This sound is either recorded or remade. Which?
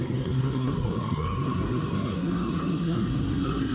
remade